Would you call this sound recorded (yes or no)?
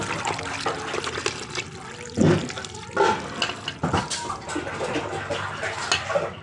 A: yes